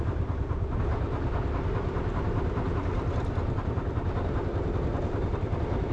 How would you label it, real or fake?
real